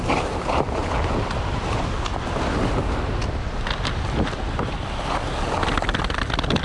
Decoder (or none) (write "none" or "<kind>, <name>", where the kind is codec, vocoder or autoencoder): none